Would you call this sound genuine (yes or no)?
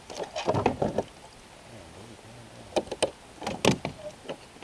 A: yes